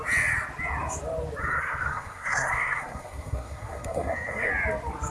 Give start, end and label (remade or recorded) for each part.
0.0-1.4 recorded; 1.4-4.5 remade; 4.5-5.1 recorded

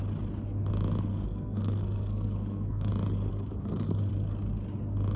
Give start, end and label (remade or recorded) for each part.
0.0-1.1 recorded; 1.1-2.9 remade; 2.9-3.3 recorded; 3.3-4.1 remade; 4.1-5.2 recorded